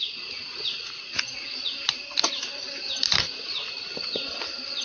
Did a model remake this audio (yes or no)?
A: no